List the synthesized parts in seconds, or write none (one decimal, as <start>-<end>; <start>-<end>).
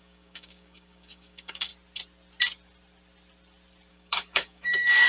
0.0-1.7; 3.9-5.1